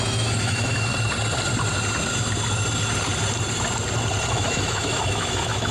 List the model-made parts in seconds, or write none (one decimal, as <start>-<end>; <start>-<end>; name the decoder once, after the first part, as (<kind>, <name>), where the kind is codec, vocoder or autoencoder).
0.0-0.9 (autoencoder, DAC-VAE); 4.3-5.7